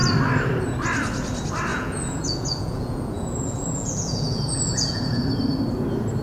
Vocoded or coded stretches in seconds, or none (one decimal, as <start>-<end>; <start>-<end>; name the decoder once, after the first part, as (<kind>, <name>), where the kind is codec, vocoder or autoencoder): 1.7-5.2 (vocoder, Vocos)